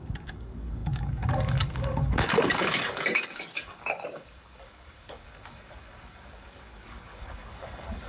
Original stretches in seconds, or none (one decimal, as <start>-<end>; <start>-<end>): none